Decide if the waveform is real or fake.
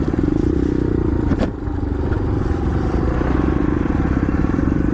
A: fake